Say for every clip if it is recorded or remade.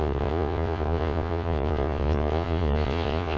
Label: remade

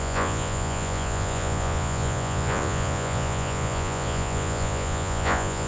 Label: remade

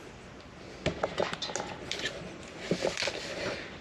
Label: recorded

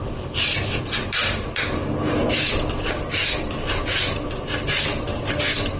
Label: recorded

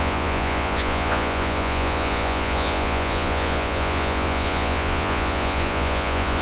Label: remade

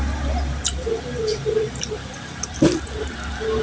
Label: recorded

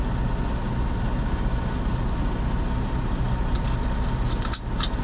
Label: recorded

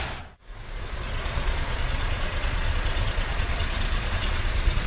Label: remade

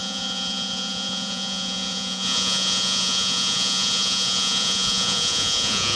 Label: remade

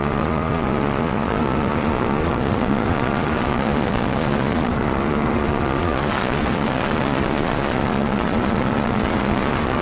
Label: remade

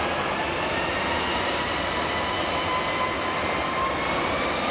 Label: recorded